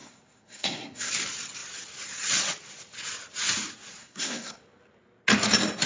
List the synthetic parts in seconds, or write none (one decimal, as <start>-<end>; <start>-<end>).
0.0-1.1; 4.0-4.6